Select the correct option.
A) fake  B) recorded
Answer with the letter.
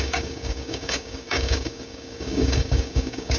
A